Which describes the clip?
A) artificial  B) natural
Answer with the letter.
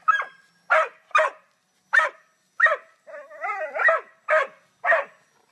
B